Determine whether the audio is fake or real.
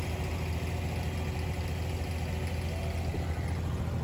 real